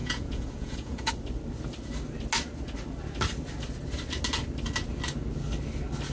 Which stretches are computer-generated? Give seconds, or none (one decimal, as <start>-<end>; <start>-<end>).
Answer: 0.0-1.1